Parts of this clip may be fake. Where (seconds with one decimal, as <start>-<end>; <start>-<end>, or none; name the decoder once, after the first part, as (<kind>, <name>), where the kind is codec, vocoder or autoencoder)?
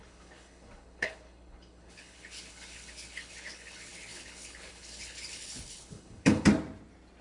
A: 0.0-6.5 (codec, HILCodec)